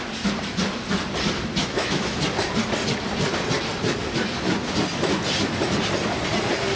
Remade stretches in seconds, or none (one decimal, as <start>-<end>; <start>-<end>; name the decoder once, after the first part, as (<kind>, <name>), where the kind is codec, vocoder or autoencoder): 1.6-2.2 (autoencoder, DAC-VAE)